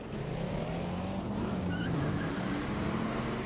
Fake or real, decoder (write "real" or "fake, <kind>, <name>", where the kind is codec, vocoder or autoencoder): fake, vocoder, BigVGAN v2